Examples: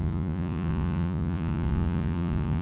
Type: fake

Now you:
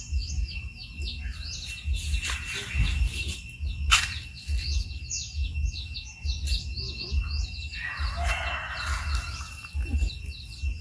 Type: real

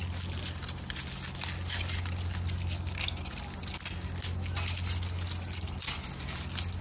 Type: real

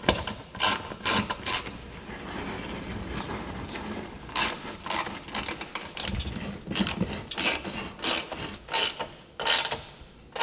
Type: real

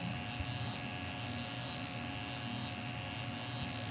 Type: real